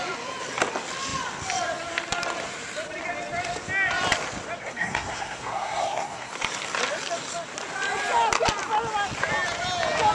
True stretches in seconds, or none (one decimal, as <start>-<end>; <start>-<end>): 0.0-4.6; 6.3-10.1